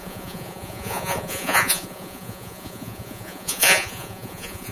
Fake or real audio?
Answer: fake